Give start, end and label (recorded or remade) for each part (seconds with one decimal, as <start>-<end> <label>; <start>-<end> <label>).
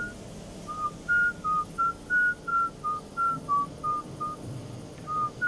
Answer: 0.0-5.5 recorded